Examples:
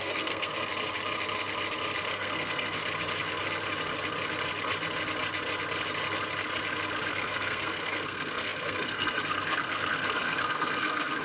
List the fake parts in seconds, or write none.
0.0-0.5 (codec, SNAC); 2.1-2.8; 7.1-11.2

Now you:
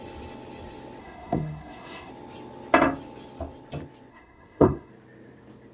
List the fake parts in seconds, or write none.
1.0-2.1 (codec, SNAC); 4.1-4.9

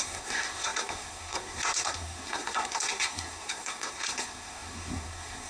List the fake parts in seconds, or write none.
0.0-5.5 (codec, SNAC)

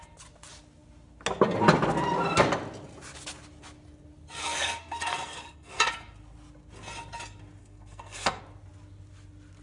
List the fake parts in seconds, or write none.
4.4-5.9 (codec, SNAC); 7.6-8.4